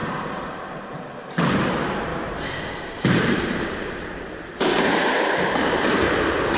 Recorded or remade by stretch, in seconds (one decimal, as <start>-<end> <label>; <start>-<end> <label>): 0.0-1.0 remade; 1.0-2.1 recorded; 2.1-6.1 remade; 6.1-6.6 recorded

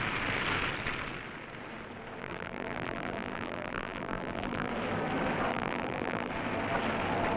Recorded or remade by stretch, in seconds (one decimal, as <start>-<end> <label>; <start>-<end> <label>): 0.0-2.2 recorded; 2.2-4.7 remade; 4.7-5.5 recorded; 5.5-6.3 remade; 6.3-7.4 recorded

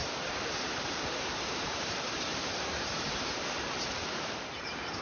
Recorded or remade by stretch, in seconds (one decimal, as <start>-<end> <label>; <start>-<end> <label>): 0.0-5.0 remade

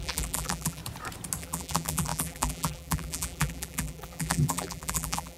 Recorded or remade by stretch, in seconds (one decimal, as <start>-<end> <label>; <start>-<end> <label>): 0.0-0.8 remade; 0.8-1.4 recorded; 1.4-5.4 remade

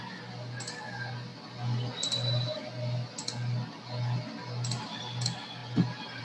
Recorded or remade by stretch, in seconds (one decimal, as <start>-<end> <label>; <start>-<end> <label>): 0.0-5.6 recorded; 5.6-6.2 remade

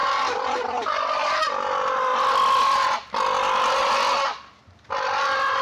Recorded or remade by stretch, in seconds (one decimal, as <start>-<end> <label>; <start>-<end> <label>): 0.0-5.6 recorded

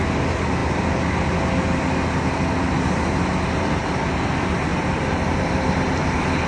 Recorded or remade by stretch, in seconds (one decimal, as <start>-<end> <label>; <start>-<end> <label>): 0.0-4.7 recorded; 4.7-5.9 remade; 5.9-6.5 recorded

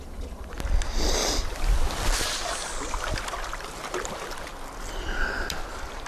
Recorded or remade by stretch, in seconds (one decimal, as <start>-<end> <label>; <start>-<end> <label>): 0.0-6.1 recorded